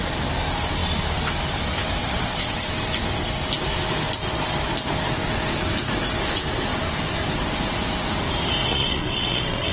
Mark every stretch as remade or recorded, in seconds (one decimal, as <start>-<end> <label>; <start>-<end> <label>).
0.0-2.0 recorded; 2.0-2.7 remade; 2.7-8.6 recorded; 8.6-9.7 remade